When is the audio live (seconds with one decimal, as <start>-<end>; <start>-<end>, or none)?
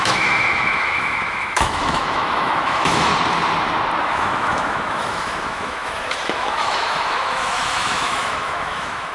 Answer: 3.1-4.0